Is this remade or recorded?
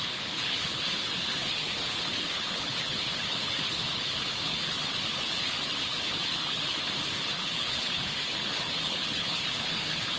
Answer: remade